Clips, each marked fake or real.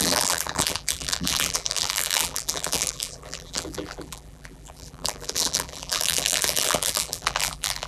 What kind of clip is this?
fake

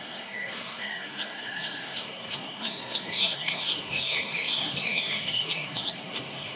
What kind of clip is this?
fake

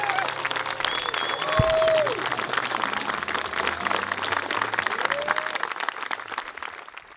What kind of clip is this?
real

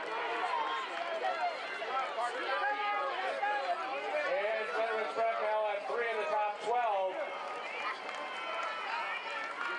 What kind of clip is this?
real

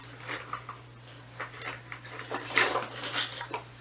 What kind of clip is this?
real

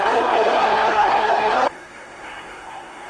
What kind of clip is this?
fake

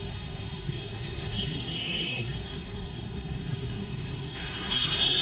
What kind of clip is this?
fake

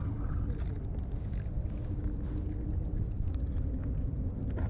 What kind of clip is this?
real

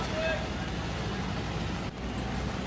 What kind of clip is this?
real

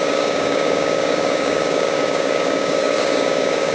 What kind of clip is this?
fake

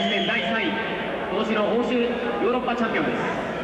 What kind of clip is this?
fake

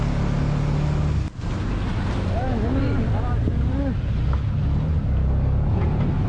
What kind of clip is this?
real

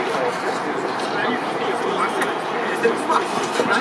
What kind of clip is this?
real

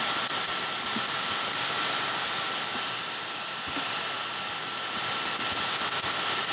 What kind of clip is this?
real